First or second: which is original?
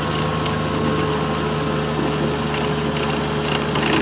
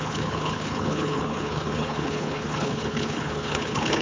first